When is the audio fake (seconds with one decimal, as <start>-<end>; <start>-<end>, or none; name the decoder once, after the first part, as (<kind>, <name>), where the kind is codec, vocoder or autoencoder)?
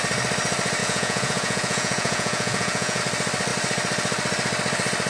0.8-3.0 (vocoder, Vocos)